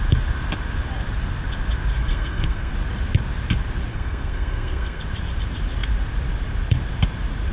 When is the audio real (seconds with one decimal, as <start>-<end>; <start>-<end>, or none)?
0.0-1.9; 2.7-3.9; 5.0-7.5